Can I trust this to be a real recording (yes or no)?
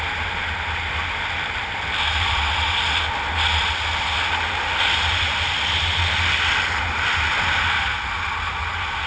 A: yes